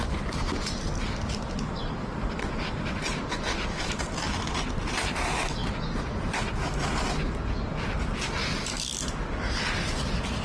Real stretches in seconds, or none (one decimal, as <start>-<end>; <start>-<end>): 0.0-1.8; 3.8-10.4